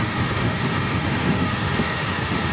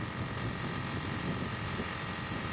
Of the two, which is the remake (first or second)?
first